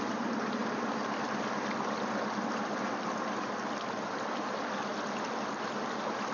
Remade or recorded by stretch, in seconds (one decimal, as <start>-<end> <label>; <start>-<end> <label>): 0.0-6.3 recorded